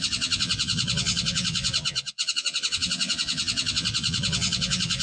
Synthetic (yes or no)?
yes